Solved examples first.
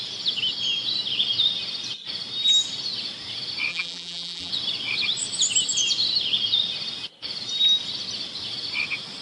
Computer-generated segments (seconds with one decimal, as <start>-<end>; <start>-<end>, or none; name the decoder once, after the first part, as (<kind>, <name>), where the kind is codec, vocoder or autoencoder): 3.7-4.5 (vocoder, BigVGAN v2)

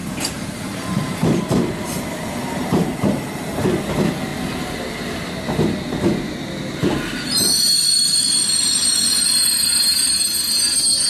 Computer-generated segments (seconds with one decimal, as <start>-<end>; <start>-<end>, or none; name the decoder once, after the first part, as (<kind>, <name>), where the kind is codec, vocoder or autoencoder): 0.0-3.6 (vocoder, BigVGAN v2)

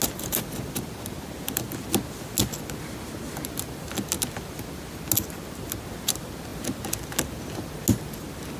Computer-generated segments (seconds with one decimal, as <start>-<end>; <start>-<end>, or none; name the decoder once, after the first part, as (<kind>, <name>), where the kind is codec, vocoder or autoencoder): none

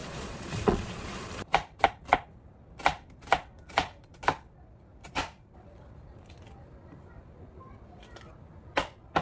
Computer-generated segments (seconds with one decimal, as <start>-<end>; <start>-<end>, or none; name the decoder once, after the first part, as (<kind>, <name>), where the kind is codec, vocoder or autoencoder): 0.0-1.3 (vocoder, Vocos)